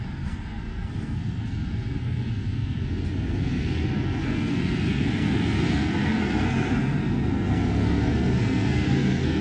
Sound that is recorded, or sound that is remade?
remade